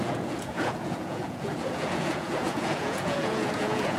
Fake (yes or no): yes